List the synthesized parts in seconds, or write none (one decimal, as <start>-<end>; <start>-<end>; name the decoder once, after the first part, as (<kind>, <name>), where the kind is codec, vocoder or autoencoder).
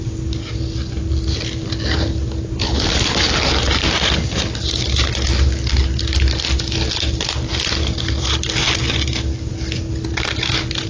none